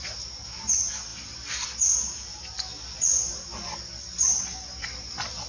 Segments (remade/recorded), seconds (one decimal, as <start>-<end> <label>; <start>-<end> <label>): 0.0-1.1 recorded; 1.1-4.4 remade; 4.4-5.5 recorded